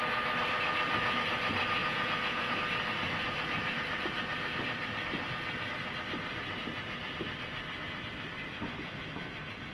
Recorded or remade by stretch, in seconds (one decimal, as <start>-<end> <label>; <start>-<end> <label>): 0.0-1.8 recorded; 1.8-2.6 remade; 2.6-9.7 recorded